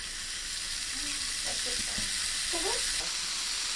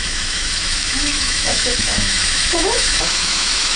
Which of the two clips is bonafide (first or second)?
first